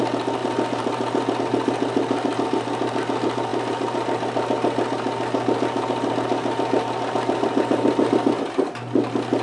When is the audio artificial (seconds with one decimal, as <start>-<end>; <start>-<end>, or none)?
none